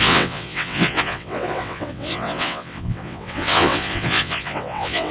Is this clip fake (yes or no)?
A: yes